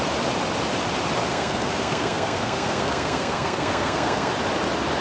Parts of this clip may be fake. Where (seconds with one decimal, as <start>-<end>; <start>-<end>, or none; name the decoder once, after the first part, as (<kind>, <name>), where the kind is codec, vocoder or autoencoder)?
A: 1.3-4.3 (codec, SNAC)